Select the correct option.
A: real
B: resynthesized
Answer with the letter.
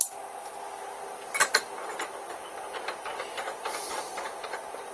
A